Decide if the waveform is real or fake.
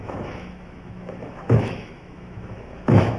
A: fake